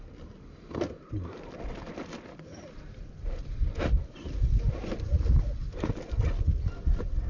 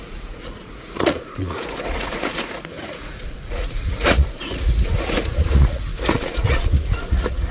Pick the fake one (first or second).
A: second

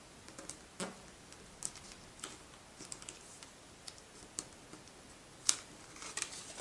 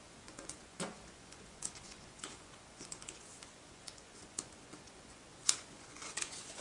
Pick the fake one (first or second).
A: second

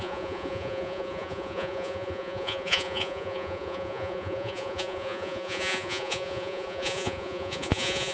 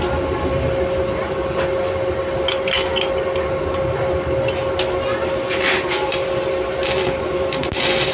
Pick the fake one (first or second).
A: first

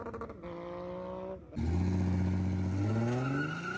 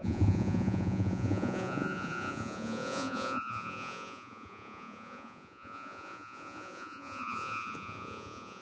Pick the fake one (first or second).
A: second